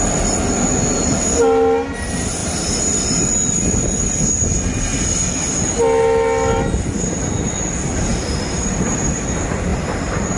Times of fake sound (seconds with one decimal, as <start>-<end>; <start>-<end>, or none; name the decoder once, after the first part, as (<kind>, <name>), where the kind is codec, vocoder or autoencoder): 2.4-3.3 (vocoder, BigVGAN v2); 8.1-9.2; 9.7-10.4